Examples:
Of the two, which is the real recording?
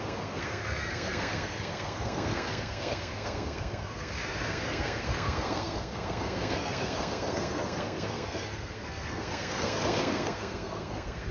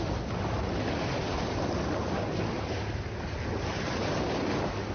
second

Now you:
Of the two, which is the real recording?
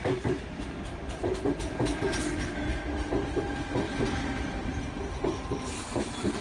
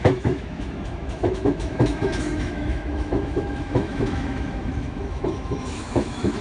first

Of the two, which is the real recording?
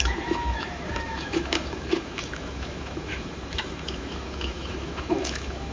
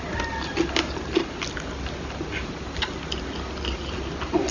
second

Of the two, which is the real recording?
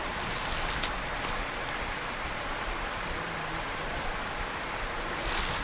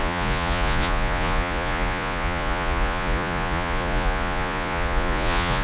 first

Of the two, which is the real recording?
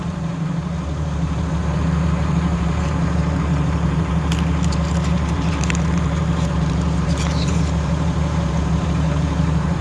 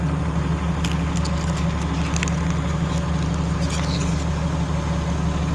second